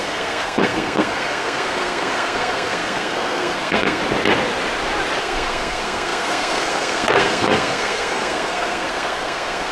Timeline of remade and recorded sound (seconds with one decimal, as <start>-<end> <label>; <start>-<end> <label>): 0.0-4.0 remade; 4.0-5.2 recorded; 5.2-9.7 remade

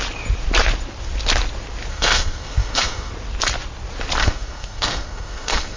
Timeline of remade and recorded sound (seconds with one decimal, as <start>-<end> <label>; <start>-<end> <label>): 0.0-1.9 recorded; 1.9-3.1 remade; 3.1-4.2 recorded; 4.2-5.8 remade

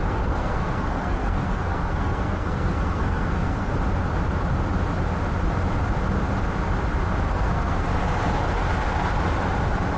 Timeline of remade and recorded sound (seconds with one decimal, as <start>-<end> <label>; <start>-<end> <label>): 0.0-3.7 remade; 3.7-7.3 recorded; 7.3-7.9 remade; 7.9-10.0 recorded

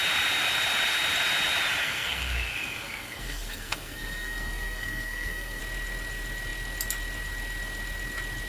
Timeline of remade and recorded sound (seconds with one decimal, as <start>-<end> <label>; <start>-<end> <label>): 0.0-1.8 recorded; 1.8-5.6 remade; 5.6-8.5 recorded

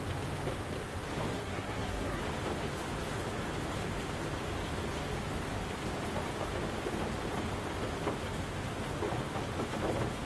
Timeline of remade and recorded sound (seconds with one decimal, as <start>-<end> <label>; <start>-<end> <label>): 0.0-1.3 recorded; 1.3-2.2 remade; 2.2-10.3 recorded